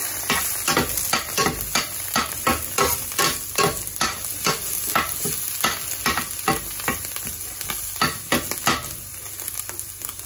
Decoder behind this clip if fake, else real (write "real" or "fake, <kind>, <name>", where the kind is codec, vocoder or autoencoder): real